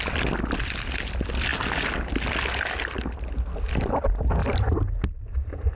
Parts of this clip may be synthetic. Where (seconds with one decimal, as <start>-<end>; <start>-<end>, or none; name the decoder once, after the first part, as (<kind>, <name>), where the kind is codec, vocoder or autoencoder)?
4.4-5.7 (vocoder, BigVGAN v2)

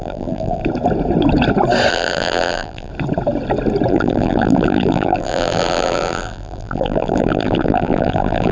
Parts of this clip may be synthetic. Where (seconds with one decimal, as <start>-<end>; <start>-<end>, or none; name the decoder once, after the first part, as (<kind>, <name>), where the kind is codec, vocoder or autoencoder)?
0.0-0.6 (vocoder, BigVGAN v2); 1.9-2.9; 3.9-8.5

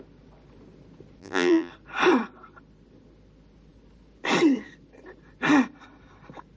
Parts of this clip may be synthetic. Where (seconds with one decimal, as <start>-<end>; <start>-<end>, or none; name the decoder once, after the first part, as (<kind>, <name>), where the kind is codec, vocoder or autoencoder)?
1.2-1.7 (vocoder, BigVGAN v2)

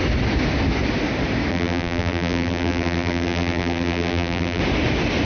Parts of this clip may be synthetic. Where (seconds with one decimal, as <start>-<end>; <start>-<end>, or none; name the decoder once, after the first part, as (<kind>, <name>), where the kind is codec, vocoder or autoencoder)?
1.5-4.6 (vocoder, BigVGAN v2)

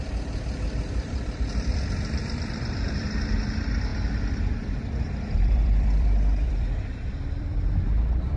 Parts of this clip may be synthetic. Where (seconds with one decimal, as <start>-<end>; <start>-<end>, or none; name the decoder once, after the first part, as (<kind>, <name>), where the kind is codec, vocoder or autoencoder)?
0.0-8.4 (vocoder, BigVGAN v2)